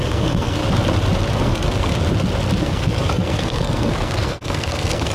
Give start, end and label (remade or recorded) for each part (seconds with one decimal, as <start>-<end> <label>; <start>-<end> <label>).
0.0-0.6 remade; 0.6-1.3 recorded; 1.3-1.9 remade; 1.9-2.6 recorded; 2.6-5.1 remade